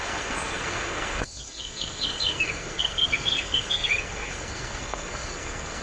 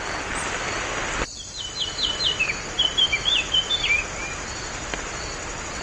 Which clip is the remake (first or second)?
first